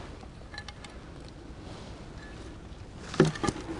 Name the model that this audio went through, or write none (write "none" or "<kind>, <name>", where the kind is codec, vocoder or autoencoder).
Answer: none